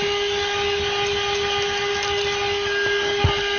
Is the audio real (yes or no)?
yes